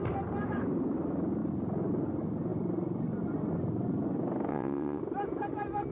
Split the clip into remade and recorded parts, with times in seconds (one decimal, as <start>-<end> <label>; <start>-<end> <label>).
0.0-4.5 recorded; 4.5-5.0 remade; 5.0-5.9 recorded